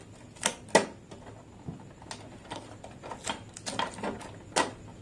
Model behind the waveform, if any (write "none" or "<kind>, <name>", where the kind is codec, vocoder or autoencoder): none